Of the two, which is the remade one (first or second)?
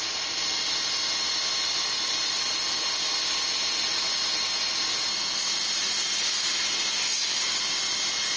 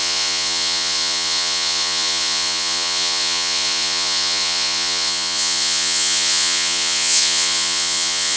second